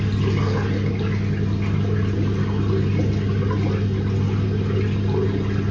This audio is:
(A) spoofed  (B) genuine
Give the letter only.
B